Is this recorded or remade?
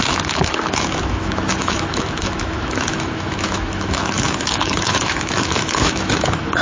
remade